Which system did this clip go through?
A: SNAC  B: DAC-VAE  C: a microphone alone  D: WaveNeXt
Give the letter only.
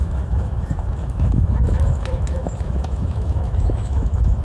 B